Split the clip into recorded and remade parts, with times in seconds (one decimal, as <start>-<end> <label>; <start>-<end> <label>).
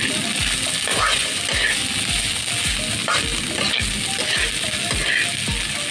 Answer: 0.0-0.9 recorded; 0.9-1.4 remade; 1.4-5.9 recorded